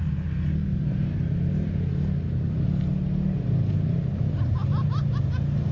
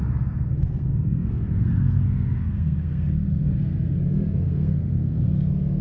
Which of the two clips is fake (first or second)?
second